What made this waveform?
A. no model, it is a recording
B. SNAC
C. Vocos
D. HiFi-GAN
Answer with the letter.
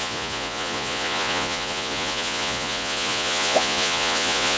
C